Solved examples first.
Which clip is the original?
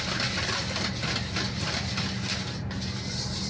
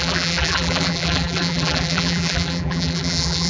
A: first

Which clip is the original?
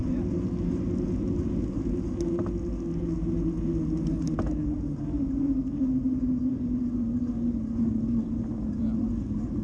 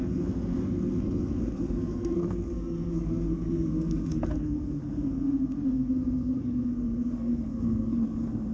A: first